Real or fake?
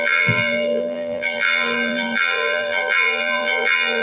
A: fake